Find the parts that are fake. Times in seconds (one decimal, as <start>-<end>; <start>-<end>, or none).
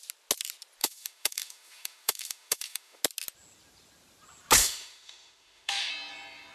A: 0.8-3.0; 4.6-5.9